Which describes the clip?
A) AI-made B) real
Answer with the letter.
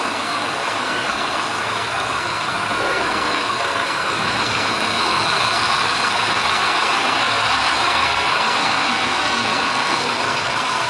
A